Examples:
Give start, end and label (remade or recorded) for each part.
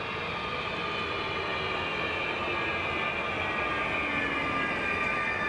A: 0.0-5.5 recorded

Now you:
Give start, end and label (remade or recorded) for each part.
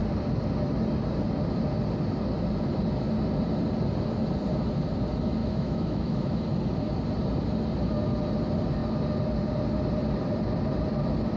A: 0.0-5.4 recorded; 5.4-6.4 remade; 6.4-11.4 recorded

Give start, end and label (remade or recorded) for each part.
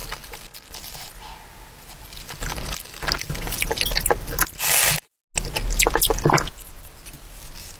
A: 0.0-7.8 recorded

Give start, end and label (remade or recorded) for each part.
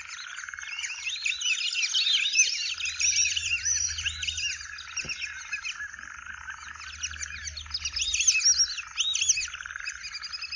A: 0.0-1.9 recorded; 1.9-4.6 remade; 4.6-10.6 recorded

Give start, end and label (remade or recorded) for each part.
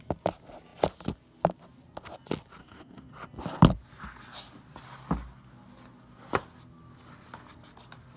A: 0.0-2.6 recorded; 2.6-3.1 remade; 3.1-8.2 recorded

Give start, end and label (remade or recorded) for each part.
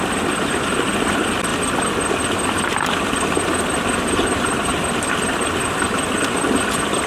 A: 0.0-7.1 recorded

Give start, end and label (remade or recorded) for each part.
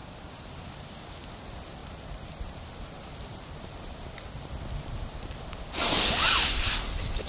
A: 0.0-1.3 remade; 1.3-1.8 recorded; 1.8-4.5 remade; 4.5-7.3 recorded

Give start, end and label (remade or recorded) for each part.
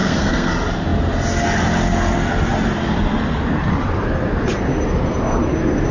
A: 0.0-0.5 remade; 0.5-5.9 recorded